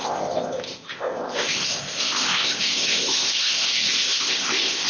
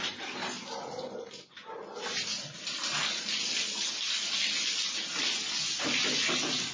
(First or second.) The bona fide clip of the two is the second